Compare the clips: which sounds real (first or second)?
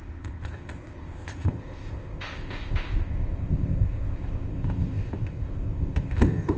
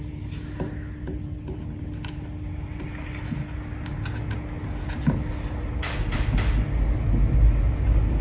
second